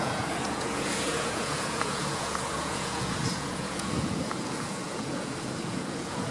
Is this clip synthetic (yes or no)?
yes